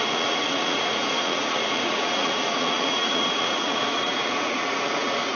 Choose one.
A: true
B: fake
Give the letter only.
B